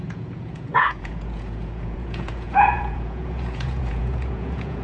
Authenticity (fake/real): fake